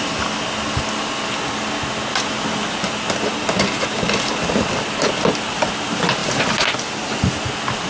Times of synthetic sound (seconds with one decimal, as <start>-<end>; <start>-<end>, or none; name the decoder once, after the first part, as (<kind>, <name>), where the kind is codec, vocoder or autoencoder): none